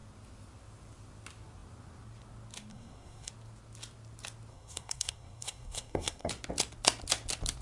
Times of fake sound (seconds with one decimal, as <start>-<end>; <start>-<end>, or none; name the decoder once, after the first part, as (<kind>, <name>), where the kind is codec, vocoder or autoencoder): 2.7-3.3 (codec, SNAC); 4.5-6.3